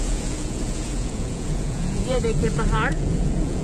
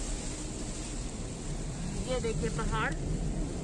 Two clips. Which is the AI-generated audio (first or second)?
first